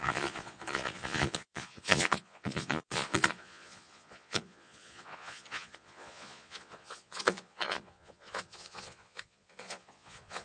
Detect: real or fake fake